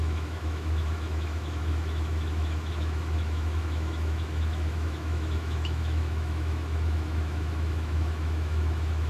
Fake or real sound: fake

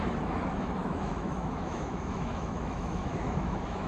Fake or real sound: fake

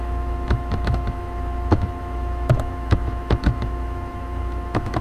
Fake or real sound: fake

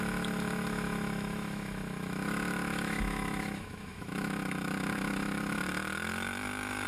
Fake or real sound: fake